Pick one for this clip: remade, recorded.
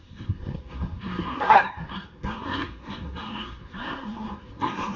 remade